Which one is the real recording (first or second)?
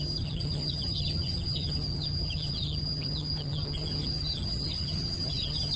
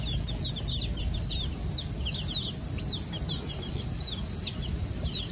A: second